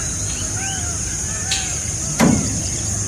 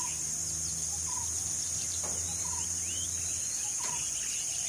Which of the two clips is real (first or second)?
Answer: second